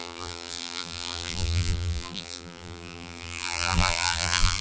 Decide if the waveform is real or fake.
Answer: fake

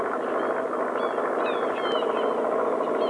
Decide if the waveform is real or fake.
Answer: real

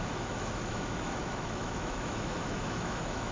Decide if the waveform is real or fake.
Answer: fake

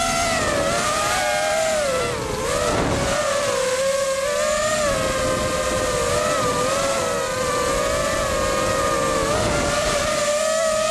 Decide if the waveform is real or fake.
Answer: real